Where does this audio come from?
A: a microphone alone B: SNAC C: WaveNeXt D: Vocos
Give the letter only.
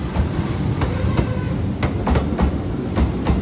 A